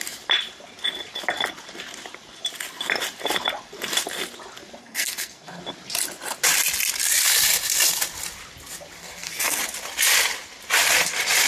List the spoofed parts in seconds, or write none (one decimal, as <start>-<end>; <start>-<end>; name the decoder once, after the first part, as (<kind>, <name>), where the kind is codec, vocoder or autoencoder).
4.8-5.6 (codec, SNAC); 9.0-9.6